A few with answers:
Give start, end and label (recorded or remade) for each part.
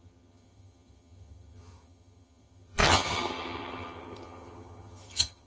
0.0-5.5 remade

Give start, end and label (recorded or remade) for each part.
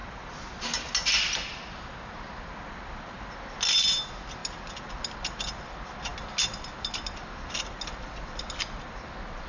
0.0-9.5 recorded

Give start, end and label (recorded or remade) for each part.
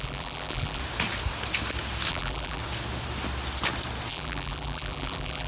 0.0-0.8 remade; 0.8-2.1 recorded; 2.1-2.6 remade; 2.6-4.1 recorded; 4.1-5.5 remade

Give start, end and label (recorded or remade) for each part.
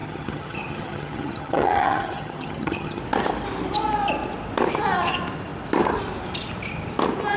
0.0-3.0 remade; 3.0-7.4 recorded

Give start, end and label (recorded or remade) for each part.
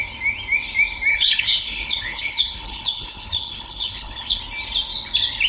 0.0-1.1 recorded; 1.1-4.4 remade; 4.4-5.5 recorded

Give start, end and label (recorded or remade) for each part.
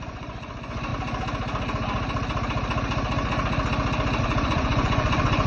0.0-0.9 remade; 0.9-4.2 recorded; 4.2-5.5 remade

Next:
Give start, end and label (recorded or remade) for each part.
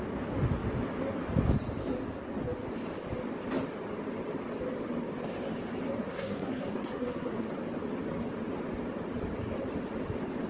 0.0-6.0 recorded; 6.0-7.5 remade; 7.5-10.5 recorded